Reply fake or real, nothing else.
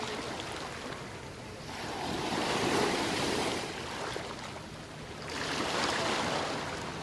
real